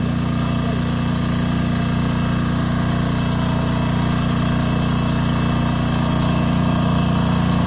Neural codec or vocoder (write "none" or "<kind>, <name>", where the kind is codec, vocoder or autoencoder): none